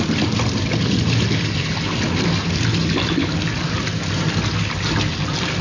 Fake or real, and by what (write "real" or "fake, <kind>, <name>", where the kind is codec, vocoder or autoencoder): real